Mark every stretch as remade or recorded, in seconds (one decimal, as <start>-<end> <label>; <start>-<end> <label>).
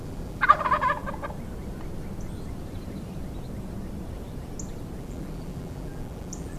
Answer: 0.0-1.0 remade; 1.0-5.0 recorded; 5.0-6.6 remade